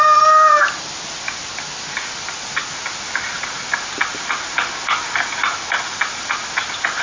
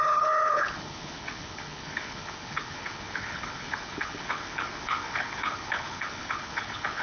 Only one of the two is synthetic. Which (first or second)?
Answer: second